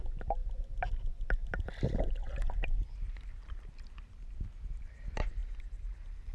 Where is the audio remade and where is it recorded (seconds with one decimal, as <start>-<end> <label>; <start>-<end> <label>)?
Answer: 0.0-6.3 recorded